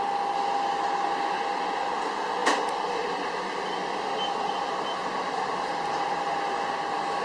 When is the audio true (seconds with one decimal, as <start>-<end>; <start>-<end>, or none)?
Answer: 0.0-7.2